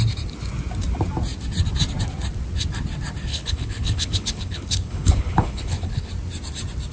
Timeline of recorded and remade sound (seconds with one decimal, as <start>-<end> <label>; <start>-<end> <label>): 0.0-3.3 recorded; 3.3-6.1 remade; 6.1-6.9 recorded